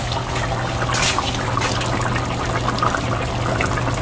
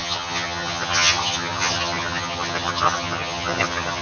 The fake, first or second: second